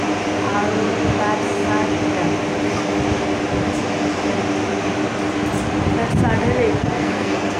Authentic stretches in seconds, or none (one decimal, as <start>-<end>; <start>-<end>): 0.0-6.8

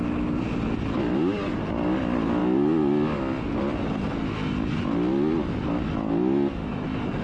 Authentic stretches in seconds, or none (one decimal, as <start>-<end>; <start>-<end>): 0.0-7.2

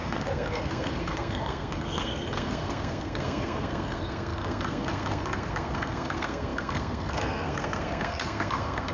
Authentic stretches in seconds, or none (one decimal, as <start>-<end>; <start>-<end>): none

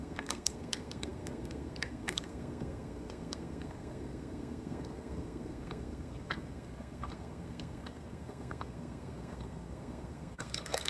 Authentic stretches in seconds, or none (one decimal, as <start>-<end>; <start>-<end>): none

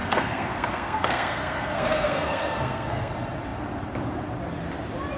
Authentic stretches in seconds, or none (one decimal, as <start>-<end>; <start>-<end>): 3.1-5.2

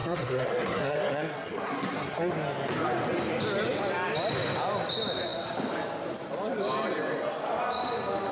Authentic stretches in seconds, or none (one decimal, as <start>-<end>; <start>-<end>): 2.3-8.3

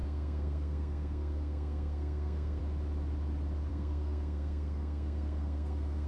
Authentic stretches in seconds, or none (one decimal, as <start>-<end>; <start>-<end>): 2.6-3.7